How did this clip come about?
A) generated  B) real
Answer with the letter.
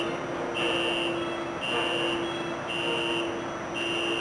B